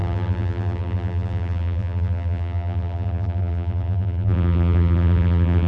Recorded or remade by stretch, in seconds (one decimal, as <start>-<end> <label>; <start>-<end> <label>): 0.0-5.7 remade